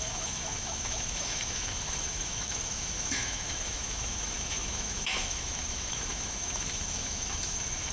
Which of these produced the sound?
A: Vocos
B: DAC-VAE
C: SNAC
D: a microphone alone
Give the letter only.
B